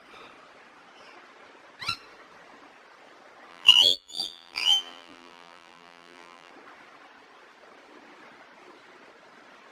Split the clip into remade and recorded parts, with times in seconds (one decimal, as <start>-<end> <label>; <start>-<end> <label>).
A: 0.0-3.5 recorded; 3.5-6.5 remade; 6.5-9.7 recorded